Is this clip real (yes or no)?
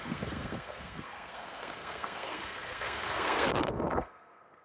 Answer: no